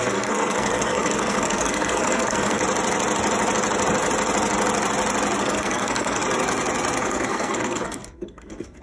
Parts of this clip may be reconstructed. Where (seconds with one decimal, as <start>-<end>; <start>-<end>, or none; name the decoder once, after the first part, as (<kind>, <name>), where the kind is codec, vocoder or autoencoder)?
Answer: 0.0-2.6 (codec, SNAC); 5.4-6.2; 7.0-8.8